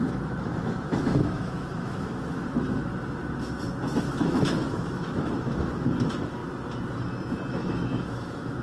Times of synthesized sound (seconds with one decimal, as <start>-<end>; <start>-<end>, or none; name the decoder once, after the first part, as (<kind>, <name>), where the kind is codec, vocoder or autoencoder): 0.0-2.9 (autoencoder, DAC-VAE); 4.0-6.4; 7.5-8.6